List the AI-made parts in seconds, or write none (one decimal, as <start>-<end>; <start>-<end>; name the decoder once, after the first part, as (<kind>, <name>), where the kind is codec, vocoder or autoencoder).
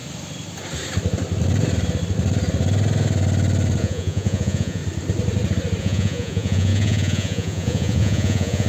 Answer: 3.8-4.8 (vocoder, Vocos); 5.8-8.7